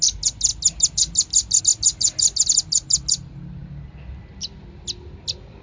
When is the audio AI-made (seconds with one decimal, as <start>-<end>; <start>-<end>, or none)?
none